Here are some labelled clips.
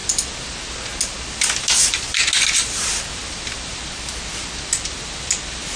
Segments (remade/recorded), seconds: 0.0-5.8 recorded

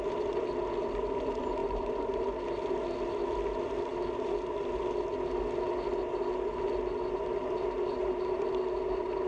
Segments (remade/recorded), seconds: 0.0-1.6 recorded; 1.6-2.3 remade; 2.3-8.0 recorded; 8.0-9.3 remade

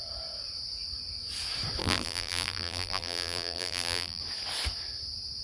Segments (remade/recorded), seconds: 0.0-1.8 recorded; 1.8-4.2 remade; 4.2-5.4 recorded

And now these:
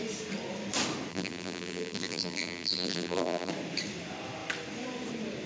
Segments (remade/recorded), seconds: 0.0-1.1 recorded; 1.1-3.5 remade; 3.5-5.5 recorded

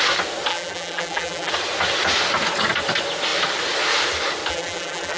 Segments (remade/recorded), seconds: 0.0-0.5 recorded; 0.5-1.5 remade; 1.5-4.5 recorded; 4.5-5.2 remade

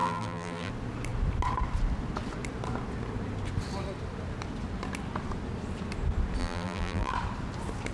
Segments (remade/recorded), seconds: 0.0-0.7 remade; 0.7-6.4 recorded; 6.4-7.1 remade; 7.1-7.9 recorded